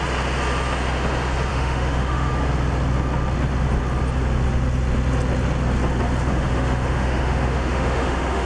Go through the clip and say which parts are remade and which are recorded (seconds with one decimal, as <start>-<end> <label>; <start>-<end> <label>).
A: 0.0-1.5 recorded; 1.5-2.3 remade; 2.3-6.3 recorded; 6.3-8.5 remade